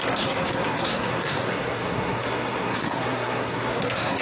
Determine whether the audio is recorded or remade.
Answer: remade